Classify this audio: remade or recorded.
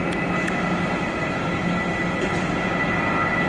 recorded